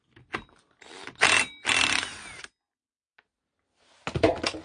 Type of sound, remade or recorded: recorded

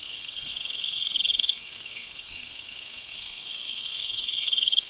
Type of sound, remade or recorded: remade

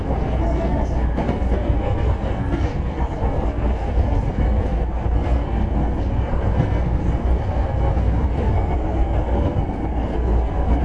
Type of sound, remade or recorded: remade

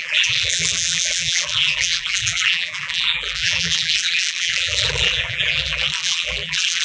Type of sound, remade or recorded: remade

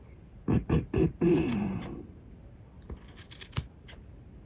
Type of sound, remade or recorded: recorded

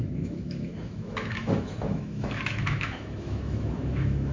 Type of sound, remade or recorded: remade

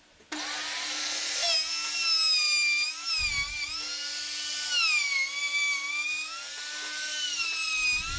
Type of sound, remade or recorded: recorded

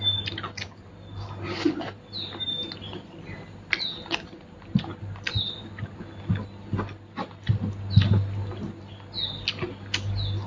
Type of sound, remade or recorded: recorded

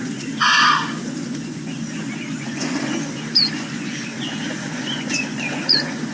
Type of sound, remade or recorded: remade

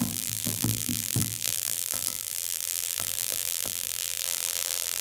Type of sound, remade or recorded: remade